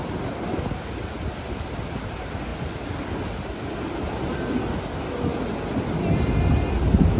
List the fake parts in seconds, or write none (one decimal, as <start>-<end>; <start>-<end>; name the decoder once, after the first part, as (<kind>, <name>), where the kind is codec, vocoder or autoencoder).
none